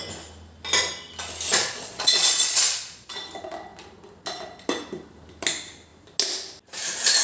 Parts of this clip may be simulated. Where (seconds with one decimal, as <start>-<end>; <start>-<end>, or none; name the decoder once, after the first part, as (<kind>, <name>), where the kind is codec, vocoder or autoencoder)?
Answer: 1.6-3.1 (vocoder, Vocos)